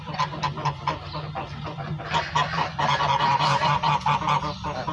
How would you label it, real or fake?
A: real